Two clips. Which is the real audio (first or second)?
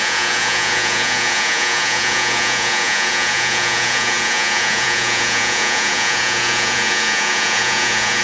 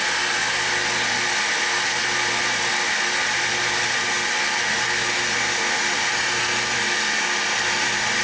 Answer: second